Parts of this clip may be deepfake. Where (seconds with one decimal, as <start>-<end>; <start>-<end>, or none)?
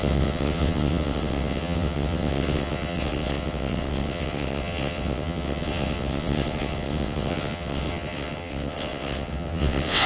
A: 0.0-10.1